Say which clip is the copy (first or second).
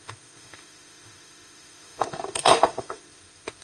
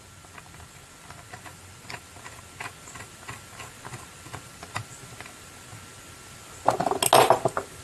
first